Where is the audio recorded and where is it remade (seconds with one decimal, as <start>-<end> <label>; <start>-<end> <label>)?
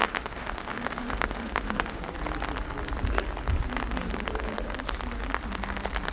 0.0-2.0 remade; 2.0-6.1 recorded